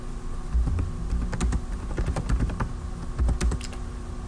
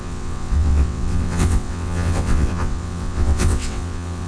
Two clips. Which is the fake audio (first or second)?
second